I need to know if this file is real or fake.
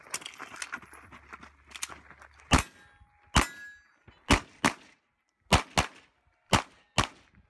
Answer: real